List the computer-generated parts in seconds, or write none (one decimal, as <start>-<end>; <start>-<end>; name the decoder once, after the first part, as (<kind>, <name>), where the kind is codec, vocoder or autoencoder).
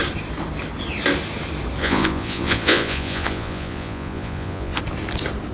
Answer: 1.8-4.8 (vocoder, Vocos)